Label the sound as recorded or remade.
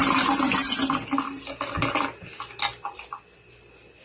recorded